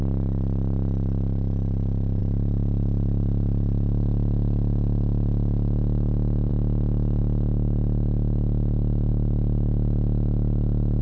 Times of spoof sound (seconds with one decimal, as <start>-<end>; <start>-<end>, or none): none